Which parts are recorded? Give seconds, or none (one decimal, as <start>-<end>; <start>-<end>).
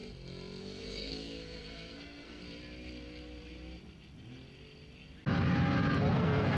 0.0-0.6; 2.4-6.1